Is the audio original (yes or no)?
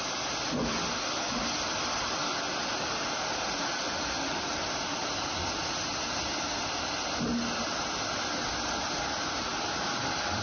yes